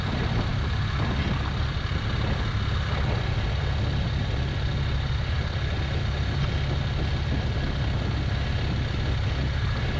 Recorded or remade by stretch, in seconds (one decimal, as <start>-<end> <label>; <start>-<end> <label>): 0.0-10.0 recorded

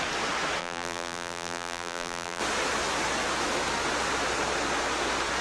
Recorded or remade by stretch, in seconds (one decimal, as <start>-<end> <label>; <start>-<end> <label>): 0.0-0.6 recorded; 0.6-2.4 remade; 2.4-5.4 recorded

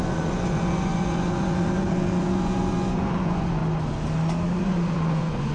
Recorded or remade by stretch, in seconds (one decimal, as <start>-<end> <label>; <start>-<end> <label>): 0.0-3.6 remade; 3.6-4.6 recorded; 4.6-5.5 remade

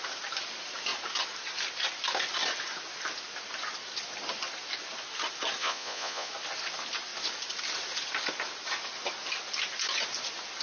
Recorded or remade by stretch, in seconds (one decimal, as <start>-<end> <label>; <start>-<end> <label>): 0.0-5.6 recorded; 5.6-6.3 remade; 6.3-10.6 recorded

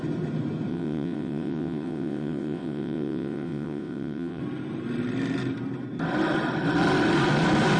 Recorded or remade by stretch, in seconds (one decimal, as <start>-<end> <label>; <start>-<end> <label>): 0.0-0.7 recorded; 0.7-4.4 remade; 4.4-7.8 recorded

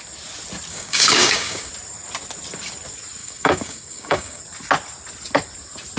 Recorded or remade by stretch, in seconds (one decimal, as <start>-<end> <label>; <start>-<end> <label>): 0.0-0.7 recorded; 0.7-1.7 remade; 1.7-3.2 recorded; 3.2-4.4 remade; 4.4-6.0 recorded